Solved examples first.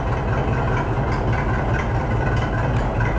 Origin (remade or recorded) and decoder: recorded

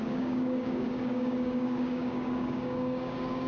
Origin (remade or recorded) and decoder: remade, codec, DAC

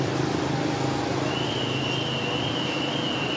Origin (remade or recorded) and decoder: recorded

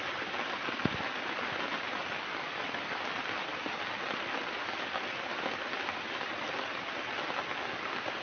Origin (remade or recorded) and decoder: recorded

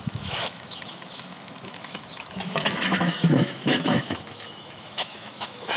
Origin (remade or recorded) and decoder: remade, autoencoder, DAC-VAE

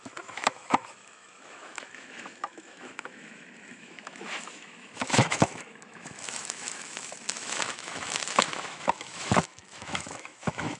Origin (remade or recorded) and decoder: remade, autoencoder, DAC-VAE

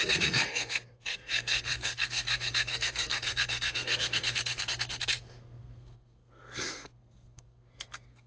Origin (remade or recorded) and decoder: remade, codec, SNAC